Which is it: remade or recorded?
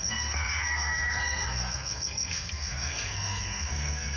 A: remade